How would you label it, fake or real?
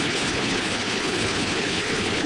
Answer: fake